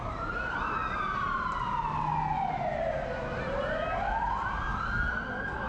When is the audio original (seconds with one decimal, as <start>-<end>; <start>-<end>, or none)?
0.0-5.7